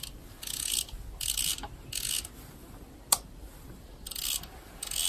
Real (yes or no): yes